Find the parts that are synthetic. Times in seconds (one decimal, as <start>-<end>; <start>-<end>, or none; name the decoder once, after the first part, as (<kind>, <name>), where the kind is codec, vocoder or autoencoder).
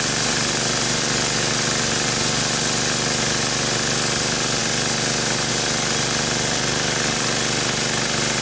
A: none